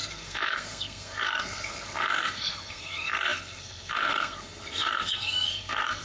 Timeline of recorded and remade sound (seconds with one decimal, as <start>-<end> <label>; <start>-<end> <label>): 0.0-6.0 remade